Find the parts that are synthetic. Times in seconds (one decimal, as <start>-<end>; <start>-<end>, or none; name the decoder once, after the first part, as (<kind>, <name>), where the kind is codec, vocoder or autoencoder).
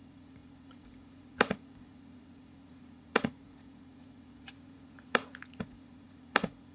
0.0-6.7 (vocoder, Vocos)